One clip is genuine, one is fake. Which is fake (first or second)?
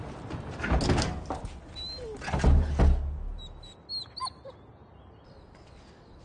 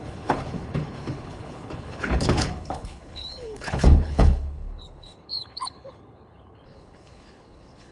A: second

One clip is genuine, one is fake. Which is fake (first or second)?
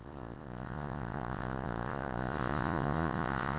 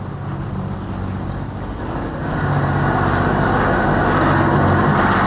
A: first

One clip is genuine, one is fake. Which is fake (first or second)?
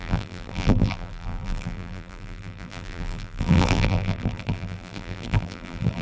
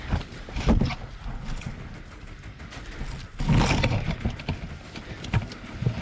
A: first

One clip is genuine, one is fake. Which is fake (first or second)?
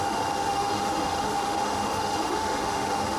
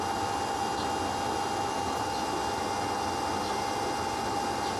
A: first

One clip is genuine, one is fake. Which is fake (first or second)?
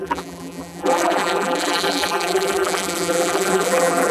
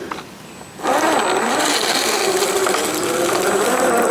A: first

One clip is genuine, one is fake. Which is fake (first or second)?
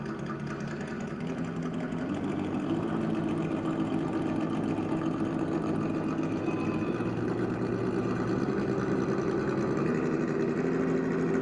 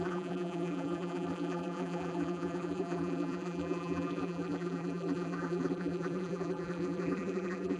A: second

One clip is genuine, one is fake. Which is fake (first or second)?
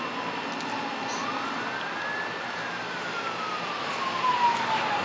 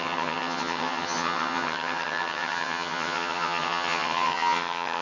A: second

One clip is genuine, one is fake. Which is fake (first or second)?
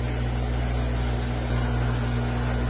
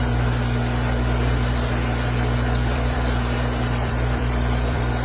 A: second